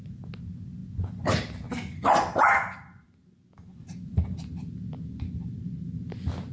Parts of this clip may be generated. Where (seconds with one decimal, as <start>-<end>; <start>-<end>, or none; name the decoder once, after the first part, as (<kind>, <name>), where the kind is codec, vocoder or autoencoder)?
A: none